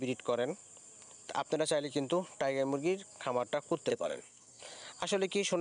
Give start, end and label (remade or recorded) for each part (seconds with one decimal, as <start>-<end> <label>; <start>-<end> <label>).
0.0-3.9 recorded; 3.9-4.6 remade; 4.6-5.6 recorded